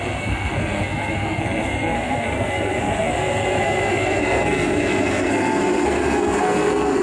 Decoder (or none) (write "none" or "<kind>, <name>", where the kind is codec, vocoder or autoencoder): codec, SNAC